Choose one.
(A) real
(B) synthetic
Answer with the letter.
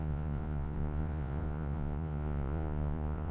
B